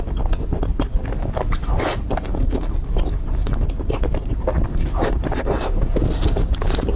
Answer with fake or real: real